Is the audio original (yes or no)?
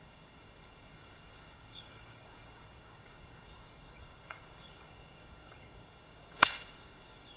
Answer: no